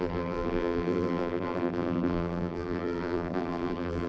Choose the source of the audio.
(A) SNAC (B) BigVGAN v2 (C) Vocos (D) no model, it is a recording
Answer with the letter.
B